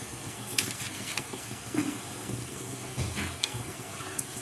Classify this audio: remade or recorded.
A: remade